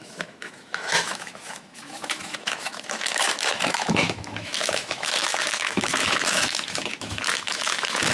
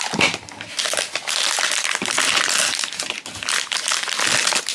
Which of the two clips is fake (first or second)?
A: first